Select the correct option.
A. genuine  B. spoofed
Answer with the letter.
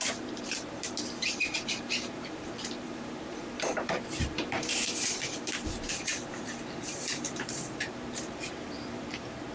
B